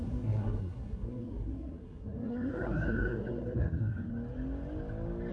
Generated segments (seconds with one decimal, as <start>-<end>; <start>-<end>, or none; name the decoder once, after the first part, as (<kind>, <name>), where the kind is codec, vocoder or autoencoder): 0.0-4.1 (codec, SNAC)

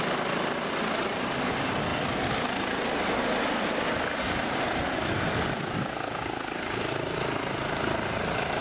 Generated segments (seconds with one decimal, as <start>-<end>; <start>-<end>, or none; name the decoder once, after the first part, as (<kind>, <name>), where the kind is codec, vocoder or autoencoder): none

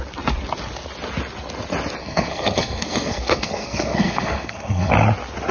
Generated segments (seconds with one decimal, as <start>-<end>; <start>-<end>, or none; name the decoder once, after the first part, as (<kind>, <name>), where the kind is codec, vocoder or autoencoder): 2.0-4.9 (codec, SNAC)

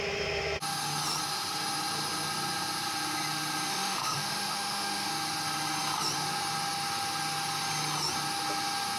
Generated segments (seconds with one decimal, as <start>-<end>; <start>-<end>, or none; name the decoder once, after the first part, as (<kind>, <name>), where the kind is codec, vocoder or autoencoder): 3.7-5.1 (autoencoder, DAC-VAE)

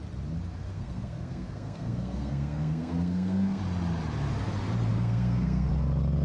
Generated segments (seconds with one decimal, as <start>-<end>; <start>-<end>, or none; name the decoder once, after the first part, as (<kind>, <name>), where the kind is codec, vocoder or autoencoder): 0.7-3.6 (codec, SNAC); 4.9-5.7